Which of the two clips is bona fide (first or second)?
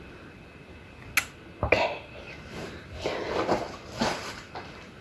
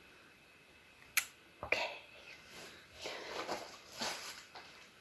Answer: first